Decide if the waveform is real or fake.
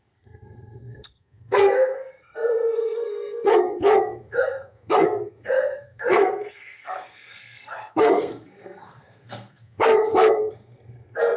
fake